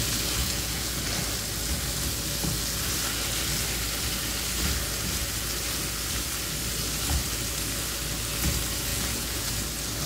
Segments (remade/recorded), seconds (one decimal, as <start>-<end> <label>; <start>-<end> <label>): 0.0-0.4 recorded; 0.4-1.0 remade; 1.0-8.9 recorded; 8.9-9.5 remade; 9.5-10.1 recorded